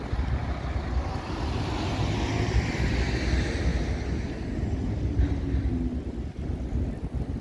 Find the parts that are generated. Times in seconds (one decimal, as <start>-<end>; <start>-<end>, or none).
none